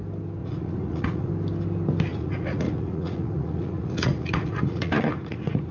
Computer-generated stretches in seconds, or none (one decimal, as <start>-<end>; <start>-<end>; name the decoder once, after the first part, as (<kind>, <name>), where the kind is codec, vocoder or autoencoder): 0.4-1.3 (vocoder, Vocos); 2.1-5.7